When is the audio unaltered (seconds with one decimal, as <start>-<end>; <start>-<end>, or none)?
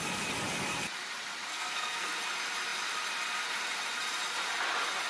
0.0-1.5; 2.2-5.1